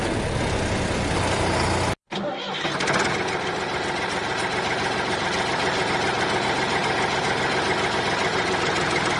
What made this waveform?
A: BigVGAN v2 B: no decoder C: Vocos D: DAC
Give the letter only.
B